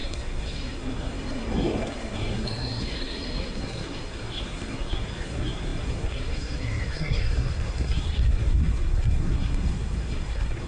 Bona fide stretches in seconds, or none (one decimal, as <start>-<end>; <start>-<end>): none